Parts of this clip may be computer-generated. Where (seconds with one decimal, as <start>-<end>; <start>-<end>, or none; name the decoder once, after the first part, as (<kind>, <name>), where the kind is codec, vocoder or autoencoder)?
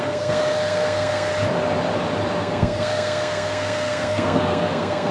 0.0-1.3 (codec, SNAC); 2.4-5.1